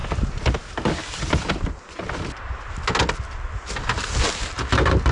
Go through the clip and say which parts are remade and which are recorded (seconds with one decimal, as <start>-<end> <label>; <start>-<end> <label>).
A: 0.0-5.1 recorded